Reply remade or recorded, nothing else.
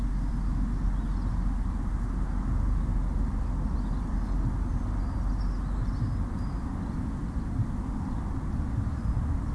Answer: recorded